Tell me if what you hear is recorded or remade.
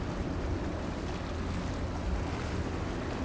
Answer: recorded